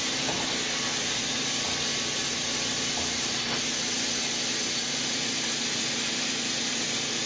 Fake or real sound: real